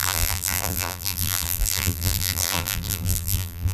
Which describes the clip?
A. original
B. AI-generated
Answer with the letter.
B